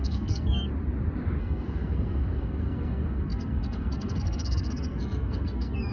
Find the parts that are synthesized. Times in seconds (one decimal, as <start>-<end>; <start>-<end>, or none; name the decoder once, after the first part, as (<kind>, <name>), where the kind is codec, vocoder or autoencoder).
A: 0.0-0.7 (codec, SNAC); 1.4-5.9